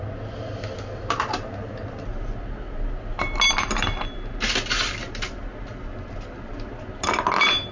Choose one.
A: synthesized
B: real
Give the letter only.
B